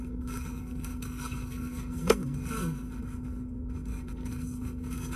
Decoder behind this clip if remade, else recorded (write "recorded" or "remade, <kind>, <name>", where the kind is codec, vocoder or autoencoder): remade, codec, SNAC